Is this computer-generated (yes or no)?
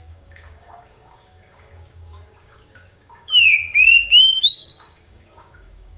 yes